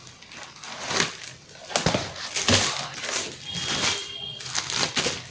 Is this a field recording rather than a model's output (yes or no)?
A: yes